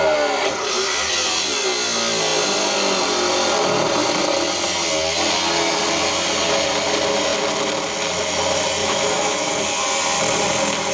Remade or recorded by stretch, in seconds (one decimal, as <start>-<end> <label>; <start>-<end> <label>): 0.0-8.8 recorded; 8.8-9.5 remade; 9.5-10.9 recorded